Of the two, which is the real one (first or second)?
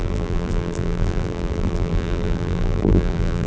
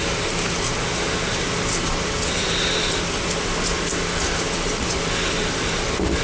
second